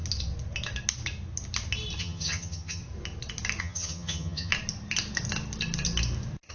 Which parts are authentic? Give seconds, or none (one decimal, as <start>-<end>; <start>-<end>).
0.0-2.0; 2.8-3.6; 4.5-6.5